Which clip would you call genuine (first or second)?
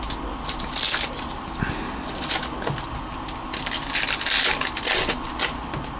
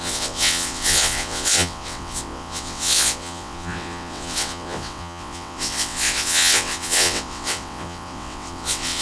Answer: first